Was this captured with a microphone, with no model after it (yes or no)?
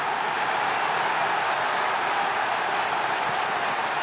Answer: yes